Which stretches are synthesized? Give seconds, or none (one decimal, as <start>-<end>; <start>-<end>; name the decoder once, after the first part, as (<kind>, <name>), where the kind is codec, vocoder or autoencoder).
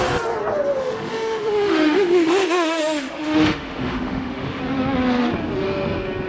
0.8-4.6 (autoencoder, DAC-VAE)